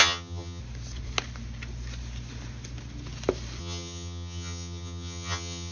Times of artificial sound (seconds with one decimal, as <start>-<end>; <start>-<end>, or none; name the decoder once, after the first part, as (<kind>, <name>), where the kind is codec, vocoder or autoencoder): 0.0-0.6 (vocoder, HiFi-GAN); 3.6-5.7